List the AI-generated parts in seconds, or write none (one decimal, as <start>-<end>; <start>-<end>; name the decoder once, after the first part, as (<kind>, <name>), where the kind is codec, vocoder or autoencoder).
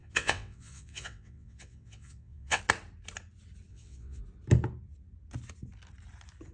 0.0-2.6 (vocoder, WaveNeXt); 3.7-4.2